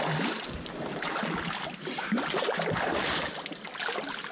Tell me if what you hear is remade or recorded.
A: recorded